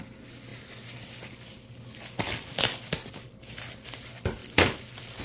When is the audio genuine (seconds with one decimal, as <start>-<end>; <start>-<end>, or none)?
0.0-5.2

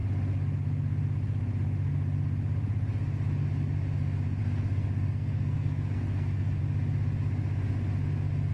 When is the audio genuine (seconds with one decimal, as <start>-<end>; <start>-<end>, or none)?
0.0-4.4; 6.6-8.5

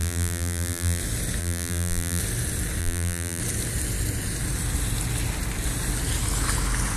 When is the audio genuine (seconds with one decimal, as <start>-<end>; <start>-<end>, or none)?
1.0-1.4; 2.2-2.8; 3.4-7.0

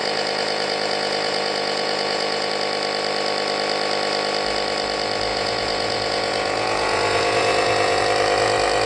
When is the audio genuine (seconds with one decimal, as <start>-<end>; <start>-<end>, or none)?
2.5-5.3; 8.0-8.9

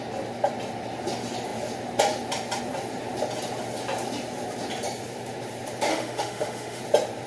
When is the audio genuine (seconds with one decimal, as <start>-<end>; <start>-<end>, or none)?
0.0-5.9; 6.8-7.3

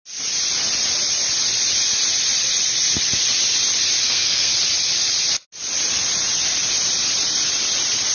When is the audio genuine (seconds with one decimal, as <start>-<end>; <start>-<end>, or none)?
0.0-4.0; 4.5-8.1